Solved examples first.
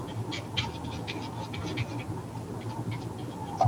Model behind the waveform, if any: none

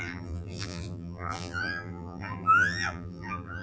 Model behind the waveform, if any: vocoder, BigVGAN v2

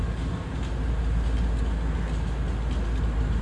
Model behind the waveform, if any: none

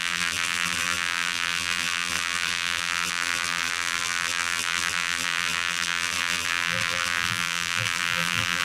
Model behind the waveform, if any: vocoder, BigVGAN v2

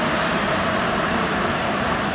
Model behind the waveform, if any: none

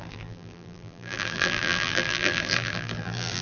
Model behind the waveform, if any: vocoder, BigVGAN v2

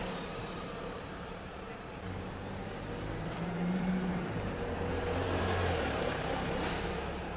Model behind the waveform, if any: vocoder, BigVGAN v2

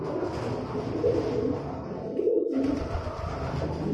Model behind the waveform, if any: none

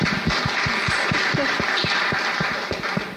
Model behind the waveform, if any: none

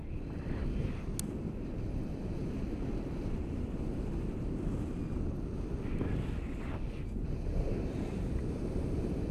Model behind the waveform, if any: none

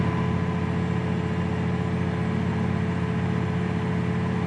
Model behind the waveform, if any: none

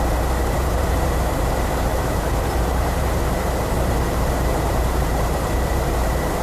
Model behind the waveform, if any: vocoder, BigVGAN v2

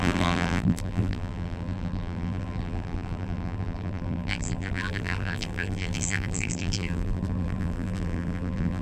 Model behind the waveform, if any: vocoder, BigVGAN v2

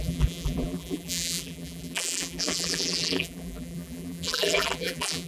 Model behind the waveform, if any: vocoder, BigVGAN v2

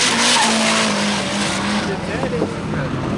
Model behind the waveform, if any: none